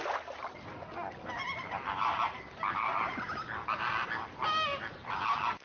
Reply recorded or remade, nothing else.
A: recorded